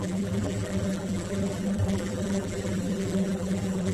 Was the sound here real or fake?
fake